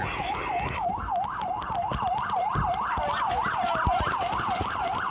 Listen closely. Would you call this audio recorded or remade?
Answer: recorded